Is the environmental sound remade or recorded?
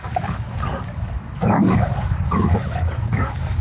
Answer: remade